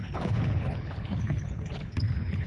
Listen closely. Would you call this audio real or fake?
fake